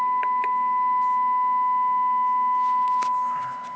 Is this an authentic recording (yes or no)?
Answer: yes